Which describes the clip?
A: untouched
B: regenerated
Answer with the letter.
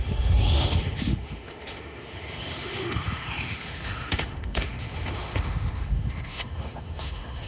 B